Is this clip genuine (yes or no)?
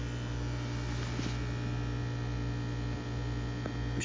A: yes